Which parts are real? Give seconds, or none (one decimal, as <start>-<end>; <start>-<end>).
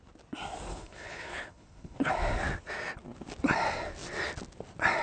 0.0-0.7; 2.1-5.0